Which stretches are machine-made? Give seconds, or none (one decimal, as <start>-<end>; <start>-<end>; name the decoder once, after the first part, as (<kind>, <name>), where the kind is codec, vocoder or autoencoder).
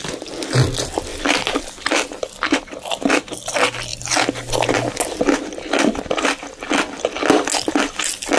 none